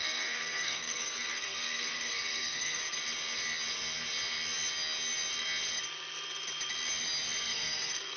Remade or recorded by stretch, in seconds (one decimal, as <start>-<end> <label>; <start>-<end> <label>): 0.0-2.8 remade; 2.8-7.4 recorded; 7.4-8.2 remade